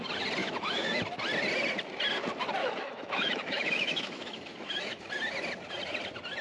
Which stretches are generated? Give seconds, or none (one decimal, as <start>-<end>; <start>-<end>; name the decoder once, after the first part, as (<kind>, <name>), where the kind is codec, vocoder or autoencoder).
0.4-1.0 (autoencoder, DAC-VAE); 2.6-5.1